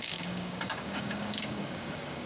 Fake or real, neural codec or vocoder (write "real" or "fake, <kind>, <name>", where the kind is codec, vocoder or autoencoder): fake, codec, DAC